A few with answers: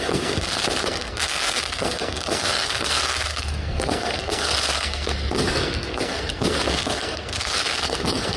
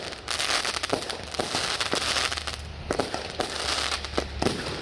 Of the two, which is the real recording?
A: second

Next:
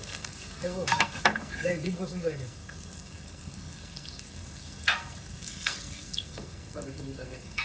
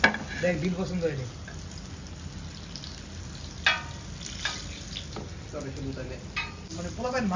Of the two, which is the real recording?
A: second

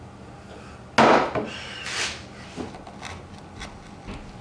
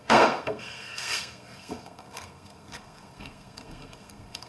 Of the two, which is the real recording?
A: first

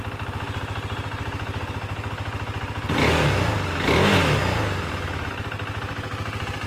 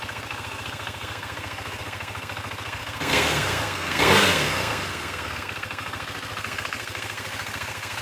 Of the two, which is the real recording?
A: first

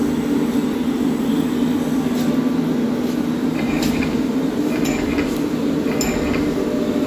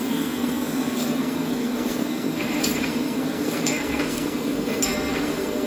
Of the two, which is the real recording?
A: first